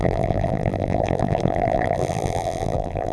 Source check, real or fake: fake